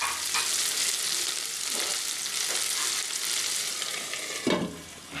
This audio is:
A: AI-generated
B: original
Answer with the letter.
B